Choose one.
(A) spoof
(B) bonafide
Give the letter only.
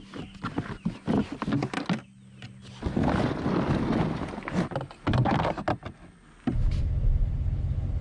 B